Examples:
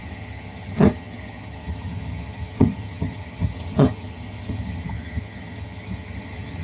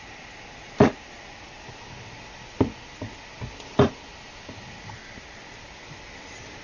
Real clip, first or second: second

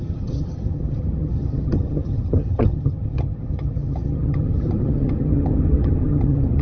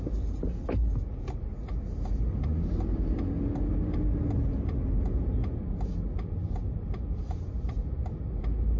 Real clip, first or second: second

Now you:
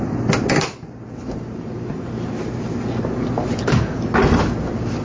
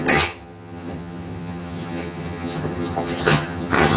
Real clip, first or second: first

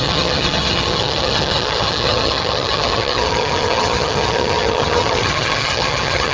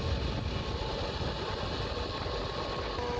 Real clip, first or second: second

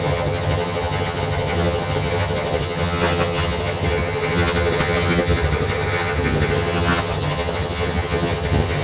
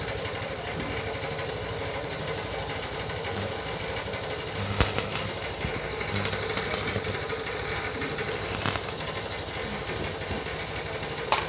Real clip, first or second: second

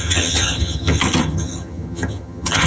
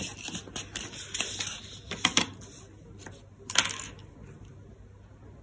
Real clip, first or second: second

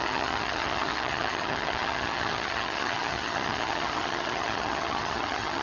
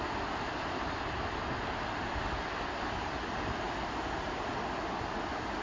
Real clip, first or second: second